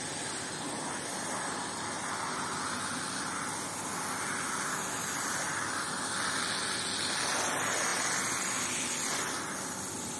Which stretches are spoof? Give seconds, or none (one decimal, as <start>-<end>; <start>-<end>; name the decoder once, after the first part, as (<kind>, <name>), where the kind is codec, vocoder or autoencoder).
none